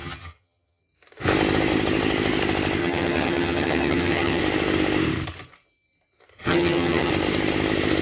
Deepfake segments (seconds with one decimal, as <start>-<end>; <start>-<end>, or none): 0.0-0.8; 2.8-4.4; 6.3-7.1